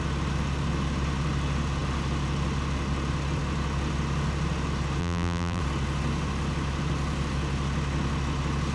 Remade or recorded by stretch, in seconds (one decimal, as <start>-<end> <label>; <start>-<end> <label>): 0.0-5.0 recorded; 5.0-5.6 remade; 5.6-8.7 recorded